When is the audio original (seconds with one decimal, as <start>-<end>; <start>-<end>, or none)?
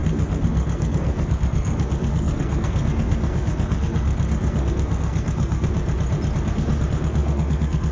5.7-6.5